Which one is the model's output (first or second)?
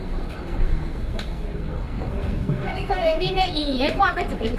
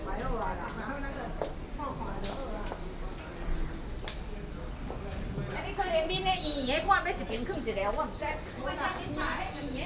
first